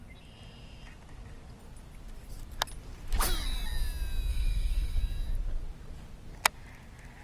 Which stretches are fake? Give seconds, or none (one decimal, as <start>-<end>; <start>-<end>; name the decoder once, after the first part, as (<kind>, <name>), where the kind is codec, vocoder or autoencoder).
4.3-5.0 (autoencoder, DAC-VAE)